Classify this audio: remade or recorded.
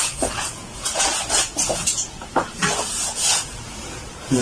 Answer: remade